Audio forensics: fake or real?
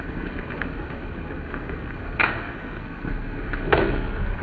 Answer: fake